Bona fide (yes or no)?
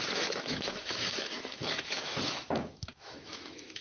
no